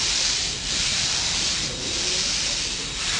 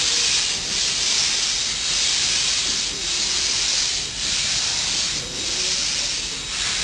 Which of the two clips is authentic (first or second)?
second